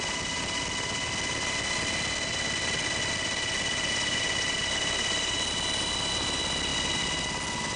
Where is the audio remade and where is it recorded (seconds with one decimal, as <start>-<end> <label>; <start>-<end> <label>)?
0.0-7.8 recorded